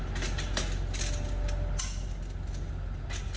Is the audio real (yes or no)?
yes